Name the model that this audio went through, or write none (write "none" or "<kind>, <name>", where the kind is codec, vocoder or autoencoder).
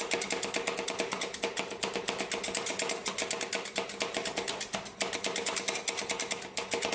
none